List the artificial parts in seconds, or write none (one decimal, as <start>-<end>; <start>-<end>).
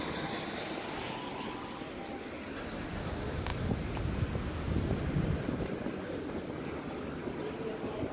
none